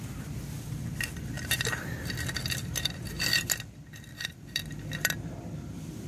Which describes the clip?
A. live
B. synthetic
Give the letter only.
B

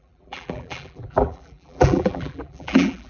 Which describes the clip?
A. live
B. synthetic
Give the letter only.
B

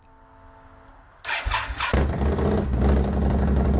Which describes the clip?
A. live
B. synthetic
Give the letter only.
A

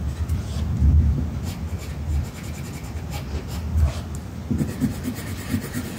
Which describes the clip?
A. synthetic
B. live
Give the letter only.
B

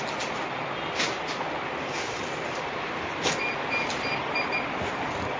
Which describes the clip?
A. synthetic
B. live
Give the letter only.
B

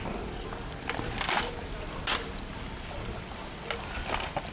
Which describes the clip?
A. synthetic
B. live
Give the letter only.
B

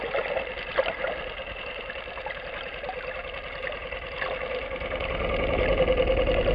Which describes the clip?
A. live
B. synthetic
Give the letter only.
A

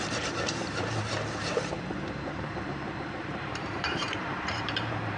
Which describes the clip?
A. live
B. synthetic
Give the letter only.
B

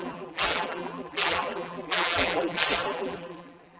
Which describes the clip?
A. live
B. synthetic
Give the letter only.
B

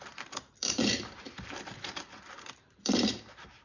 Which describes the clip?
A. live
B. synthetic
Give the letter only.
B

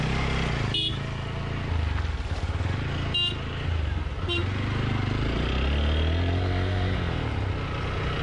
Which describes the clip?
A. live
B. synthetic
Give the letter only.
A